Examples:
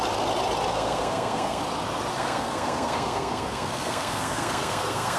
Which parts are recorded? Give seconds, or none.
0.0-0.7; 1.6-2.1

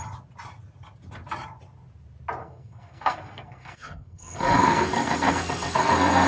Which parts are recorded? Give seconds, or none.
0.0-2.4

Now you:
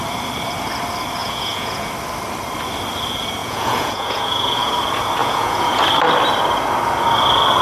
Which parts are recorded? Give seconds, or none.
0.0-1.2; 1.9-3.4; 4.8-5.2; 5.8-7.6

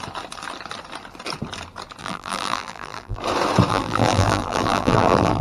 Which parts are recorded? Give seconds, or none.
0.0-2.0; 3.2-3.7

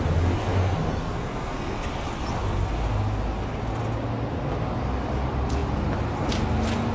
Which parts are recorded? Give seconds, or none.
0.0-0.6; 1.9-6.9

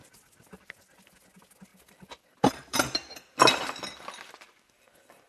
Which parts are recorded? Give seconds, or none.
0.0-1.7

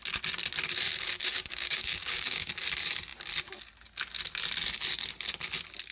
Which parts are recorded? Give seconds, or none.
0.0-0.9; 2.5-5.9

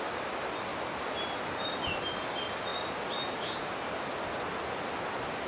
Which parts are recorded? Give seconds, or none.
0.0-0.7; 1.4-5.5